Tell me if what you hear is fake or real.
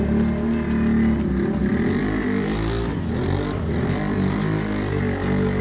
real